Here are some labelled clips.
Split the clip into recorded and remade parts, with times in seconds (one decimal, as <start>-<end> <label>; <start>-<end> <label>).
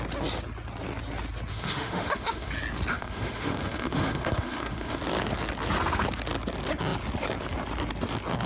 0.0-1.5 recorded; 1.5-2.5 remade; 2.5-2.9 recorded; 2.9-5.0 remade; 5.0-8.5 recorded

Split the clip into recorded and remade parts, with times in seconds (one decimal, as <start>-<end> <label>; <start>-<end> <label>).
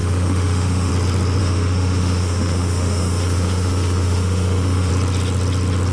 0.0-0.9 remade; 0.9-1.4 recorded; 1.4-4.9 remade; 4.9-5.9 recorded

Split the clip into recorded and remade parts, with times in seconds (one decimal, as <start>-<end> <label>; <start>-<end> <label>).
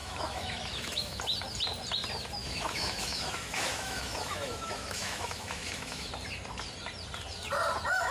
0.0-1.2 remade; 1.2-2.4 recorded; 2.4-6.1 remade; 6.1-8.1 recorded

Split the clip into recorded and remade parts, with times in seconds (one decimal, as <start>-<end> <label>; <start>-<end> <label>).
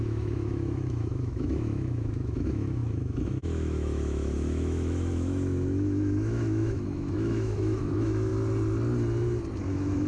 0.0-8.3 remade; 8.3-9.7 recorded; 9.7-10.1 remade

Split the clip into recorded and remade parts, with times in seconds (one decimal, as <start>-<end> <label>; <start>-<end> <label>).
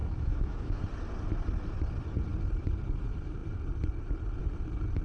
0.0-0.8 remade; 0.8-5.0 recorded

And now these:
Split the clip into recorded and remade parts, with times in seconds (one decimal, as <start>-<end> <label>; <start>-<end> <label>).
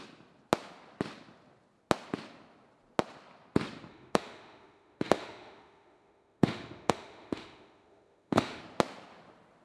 0.0-3.9 recorded; 3.9-8.6 remade; 8.6-9.6 recorded